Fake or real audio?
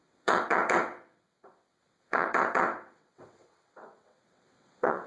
fake